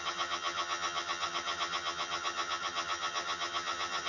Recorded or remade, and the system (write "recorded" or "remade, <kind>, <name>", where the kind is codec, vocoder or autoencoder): remade, vocoder, HiFi-GAN